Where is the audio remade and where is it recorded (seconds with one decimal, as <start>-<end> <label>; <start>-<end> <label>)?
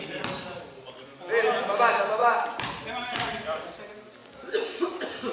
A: 0.0-2.2 recorded; 2.2-3.7 remade; 3.7-4.2 recorded; 4.2-4.8 remade; 4.8-5.3 recorded